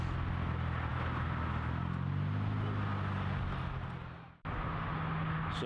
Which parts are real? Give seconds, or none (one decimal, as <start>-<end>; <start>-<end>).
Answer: 0.0-5.7